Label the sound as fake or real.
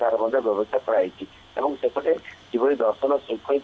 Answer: fake